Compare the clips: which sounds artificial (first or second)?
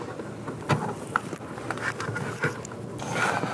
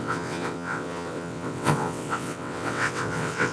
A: second